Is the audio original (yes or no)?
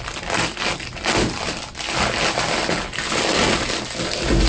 yes